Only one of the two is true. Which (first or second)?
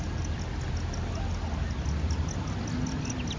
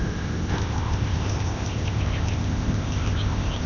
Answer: first